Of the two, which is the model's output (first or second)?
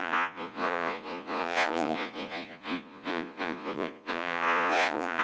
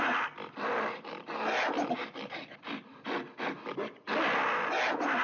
first